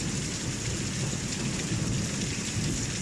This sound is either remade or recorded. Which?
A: recorded